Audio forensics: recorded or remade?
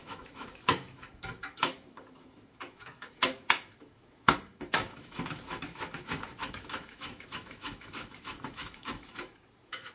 remade